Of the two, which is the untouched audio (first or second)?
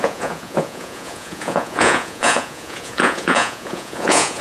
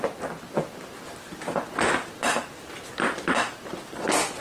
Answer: second